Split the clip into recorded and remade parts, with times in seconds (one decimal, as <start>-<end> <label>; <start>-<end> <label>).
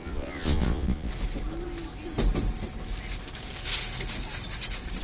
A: 0.0-1.1 remade; 1.1-5.0 recorded